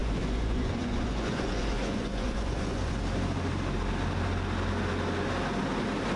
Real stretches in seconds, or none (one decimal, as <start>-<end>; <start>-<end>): 3.0-6.2